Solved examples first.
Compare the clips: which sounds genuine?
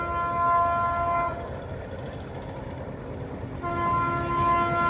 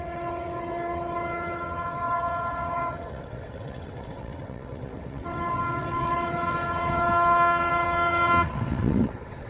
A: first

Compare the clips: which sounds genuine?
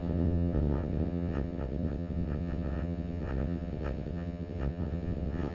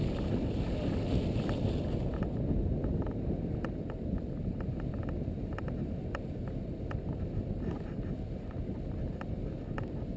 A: second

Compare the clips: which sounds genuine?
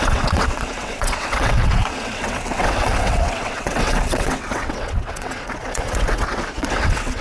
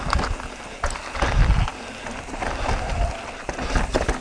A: second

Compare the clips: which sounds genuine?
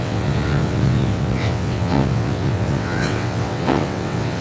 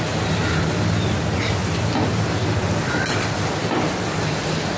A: second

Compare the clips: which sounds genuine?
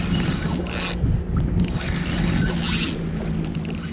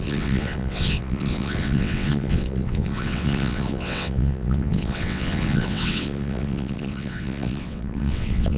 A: first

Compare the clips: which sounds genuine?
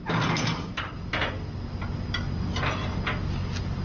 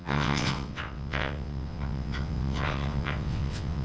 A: first